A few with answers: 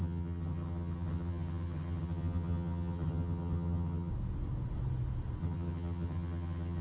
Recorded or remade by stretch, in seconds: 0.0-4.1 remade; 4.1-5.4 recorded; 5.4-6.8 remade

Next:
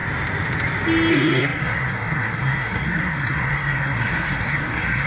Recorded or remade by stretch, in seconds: 0.0-1.1 recorded; 1.1-5.1 remade

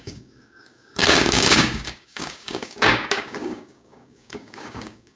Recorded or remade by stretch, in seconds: 0.0-5.2 remade

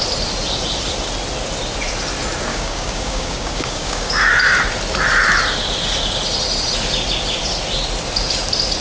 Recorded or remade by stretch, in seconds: 0.0-2.5 recorded; 2.5-4.1 remade; 4.1-8.8 recorded

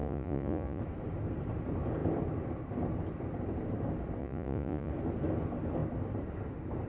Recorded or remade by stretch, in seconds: 0.0-0.8 remade; 0.8-4.2 recorded; 4.2-4.9 remade; 4.9-6.9 recorded

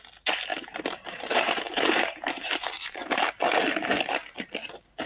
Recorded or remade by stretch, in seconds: 0.0-0.5 recorded; 0.5-3.3 remade; 3.3-3.9 recorded; 3.9-4.5 remade; 4.5-5.1 recorded